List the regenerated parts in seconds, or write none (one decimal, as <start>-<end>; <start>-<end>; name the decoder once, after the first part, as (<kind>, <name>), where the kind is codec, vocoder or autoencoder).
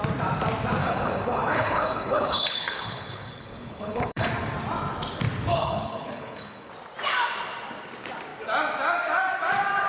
0.8-4.3 (codec, HILCodec); 5.5-6.7